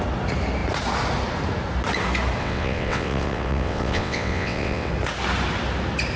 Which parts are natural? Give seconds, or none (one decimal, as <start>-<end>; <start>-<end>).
0.0-2.4; 4.9-6.2

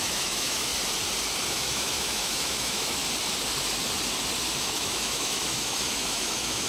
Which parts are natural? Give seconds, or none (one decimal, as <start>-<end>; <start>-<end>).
0.7-1.5; 3.0-4.6